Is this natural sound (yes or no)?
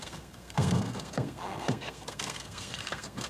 no